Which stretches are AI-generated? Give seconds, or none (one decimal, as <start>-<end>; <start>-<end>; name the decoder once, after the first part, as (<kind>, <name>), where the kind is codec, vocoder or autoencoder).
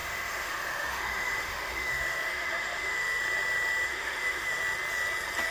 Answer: 0.0-3.2 (autoencoder, DAC-VAE); 3.9-4.6